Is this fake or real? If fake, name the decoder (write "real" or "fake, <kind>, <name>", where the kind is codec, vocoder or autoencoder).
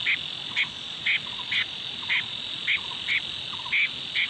real